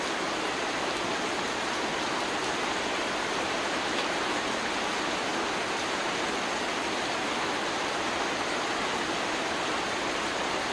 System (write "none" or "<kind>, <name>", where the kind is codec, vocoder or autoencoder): none